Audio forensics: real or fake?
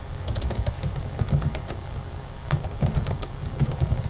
fake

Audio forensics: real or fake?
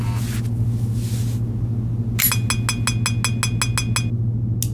real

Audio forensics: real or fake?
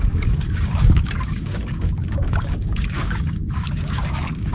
fake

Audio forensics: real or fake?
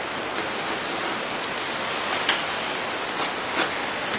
real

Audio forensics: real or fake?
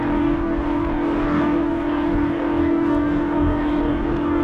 fake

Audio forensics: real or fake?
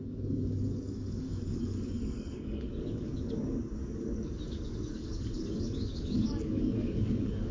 fake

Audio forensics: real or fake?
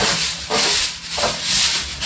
real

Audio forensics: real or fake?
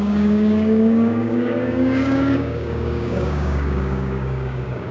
fake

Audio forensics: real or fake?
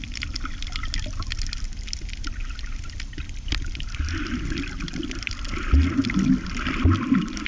real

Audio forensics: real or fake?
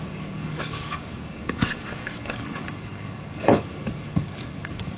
fake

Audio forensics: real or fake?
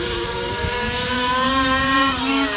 fake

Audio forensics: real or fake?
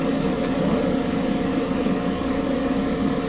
fake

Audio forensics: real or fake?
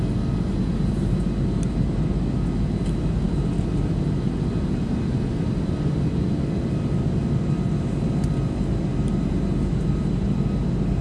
real